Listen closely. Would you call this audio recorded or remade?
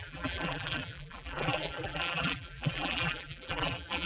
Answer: remade